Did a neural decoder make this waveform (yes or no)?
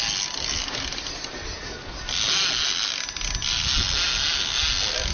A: no